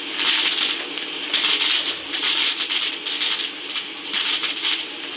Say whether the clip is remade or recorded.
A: recorded